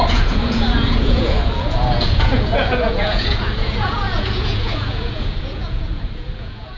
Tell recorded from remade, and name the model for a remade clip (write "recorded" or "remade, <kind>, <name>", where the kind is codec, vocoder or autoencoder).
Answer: remade, vocoder, Vocos